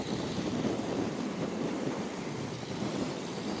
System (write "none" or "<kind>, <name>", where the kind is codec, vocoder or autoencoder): vocoder, BigVGAN v2